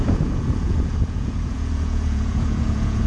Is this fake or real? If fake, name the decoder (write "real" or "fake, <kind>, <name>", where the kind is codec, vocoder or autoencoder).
fake, vocoder, Vocos